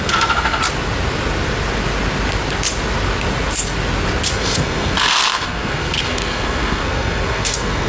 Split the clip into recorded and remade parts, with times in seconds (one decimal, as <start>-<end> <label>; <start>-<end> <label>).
0.0-0.6 remade; 0.6-4.3 recorded; 4.3-7.9 remade